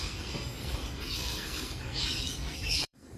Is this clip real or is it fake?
fake